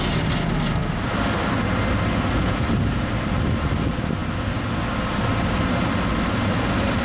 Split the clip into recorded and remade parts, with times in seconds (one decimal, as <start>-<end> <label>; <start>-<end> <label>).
0.0-7.0 recorded

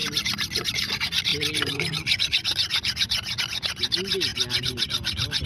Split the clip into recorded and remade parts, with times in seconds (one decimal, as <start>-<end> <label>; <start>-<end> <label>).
0.0-5.5 recorded